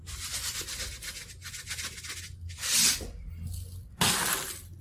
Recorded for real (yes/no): yes